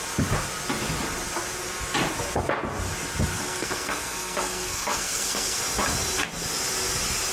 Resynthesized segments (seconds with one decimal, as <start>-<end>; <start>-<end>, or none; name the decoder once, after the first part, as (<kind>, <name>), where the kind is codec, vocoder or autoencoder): 3.3-5.6 (codec, SNAC)